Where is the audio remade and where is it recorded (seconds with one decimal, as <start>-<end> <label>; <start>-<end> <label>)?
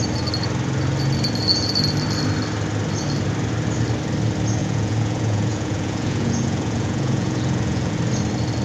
0.0-4.6 recorded; 4.6-7.9 remade; 7.9-8.6 recorded